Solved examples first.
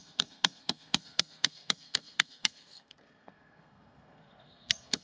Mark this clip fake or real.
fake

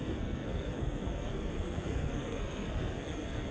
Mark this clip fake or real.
fake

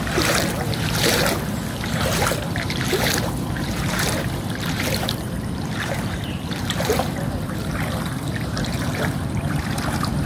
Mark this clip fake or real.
fake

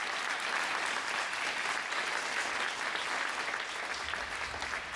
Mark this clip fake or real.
real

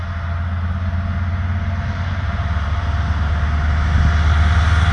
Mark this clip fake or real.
real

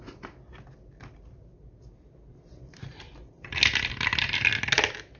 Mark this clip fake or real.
real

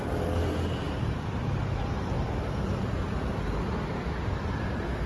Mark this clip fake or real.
real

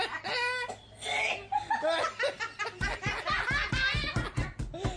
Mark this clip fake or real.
real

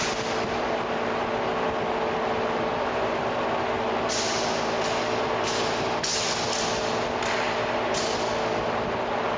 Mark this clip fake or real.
real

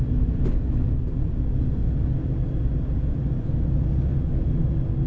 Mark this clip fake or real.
real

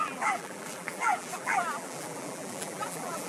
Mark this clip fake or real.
fake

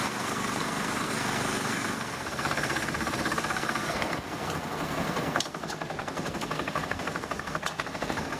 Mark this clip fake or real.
fake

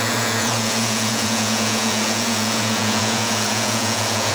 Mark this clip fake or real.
fake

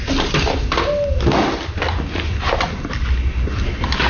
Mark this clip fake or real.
real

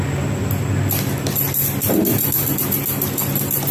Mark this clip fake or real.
real